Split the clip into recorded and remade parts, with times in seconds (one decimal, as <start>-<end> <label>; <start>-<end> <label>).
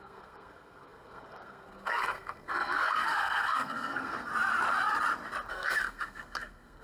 0.0-4.3 remade; 4.3-5.5 recorded; 5.5-6.8 remade